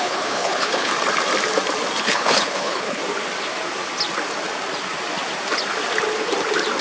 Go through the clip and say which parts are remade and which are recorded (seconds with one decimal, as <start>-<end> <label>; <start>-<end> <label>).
0.0-0.9 remade; 0.9-2.0 recorded; 2.0-3.0 remade; 3.0-6.8 recorded